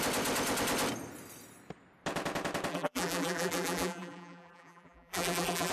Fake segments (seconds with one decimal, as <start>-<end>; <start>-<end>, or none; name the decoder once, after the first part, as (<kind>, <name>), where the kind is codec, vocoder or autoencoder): 2.7-5.7 (vocoder, BigVGAN v2)